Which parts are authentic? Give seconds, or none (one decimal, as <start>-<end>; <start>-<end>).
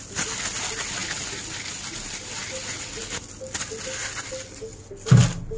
0.0-5.6